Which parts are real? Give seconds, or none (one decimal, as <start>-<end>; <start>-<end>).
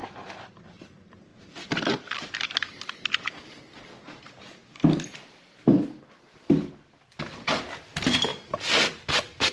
0.7-1.3; 3.6-8.3